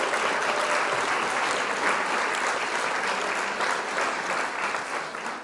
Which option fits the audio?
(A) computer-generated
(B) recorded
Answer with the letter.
B